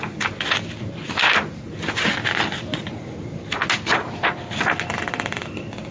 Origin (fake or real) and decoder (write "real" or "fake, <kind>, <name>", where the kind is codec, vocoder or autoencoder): real